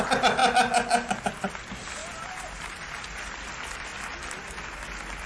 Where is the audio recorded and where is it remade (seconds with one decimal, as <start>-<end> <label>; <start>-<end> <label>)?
0.0-2.0 recorded; 2.0-3.5 remade; 3.5-5.3 recorded